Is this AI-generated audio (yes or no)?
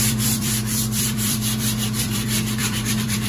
yes